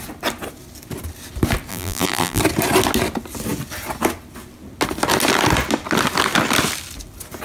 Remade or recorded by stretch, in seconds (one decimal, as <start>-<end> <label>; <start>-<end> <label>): 0.0-1.7 recorded; 1.7-2.4 remade; 2.4-7.4 recorded